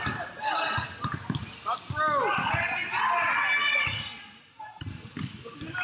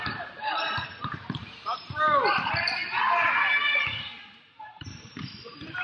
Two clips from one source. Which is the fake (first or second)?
second